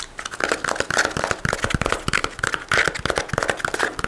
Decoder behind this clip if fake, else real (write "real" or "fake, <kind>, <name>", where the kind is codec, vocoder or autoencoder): real